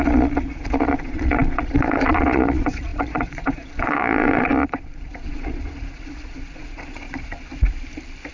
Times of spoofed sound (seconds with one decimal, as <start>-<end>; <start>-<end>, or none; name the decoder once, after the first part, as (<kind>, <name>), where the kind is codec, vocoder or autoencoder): 0.0-7.5 (vocoder, Vocos)